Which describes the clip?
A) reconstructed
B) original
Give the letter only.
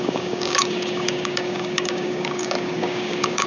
A